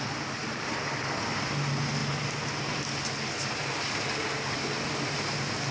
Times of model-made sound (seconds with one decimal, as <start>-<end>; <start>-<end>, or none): none